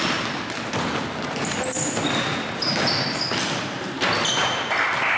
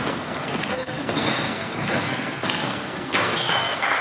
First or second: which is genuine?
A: first